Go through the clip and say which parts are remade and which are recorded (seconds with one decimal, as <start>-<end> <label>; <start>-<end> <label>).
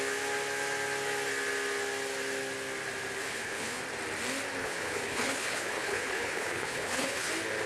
0.0-3.2 recorded; 3.2-3.8 remade; 3.8-4.6 recorded; 4.6-7.3 remade; 7.3-7.7 recorded